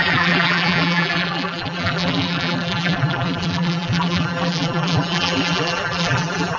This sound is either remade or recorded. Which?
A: remade